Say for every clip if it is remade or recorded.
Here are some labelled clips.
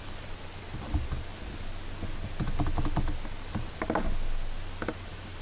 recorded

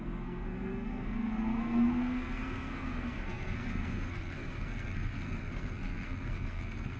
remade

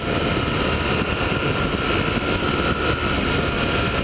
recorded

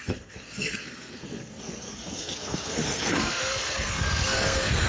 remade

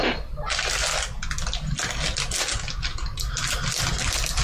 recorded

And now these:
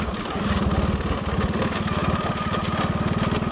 recorded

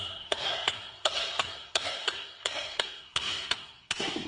remade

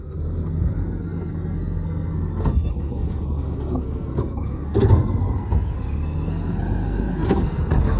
remade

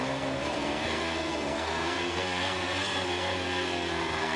remade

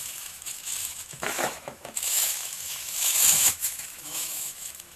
remade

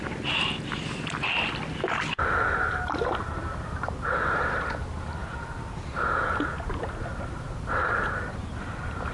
recorded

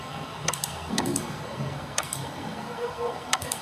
remade